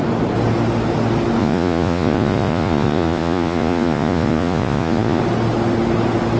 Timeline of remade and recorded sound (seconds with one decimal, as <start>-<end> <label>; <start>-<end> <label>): 0.0-1.4 recorded; 1.4-5.2 remade; 5.2-6.4 recorded